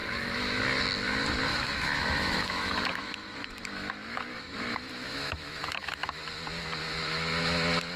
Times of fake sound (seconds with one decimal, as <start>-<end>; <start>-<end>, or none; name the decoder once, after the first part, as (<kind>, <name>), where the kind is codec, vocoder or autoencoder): 0.0-0.6 (autoencoder, DAC-VAE); 1.5-6.2